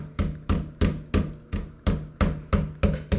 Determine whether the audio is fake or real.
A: real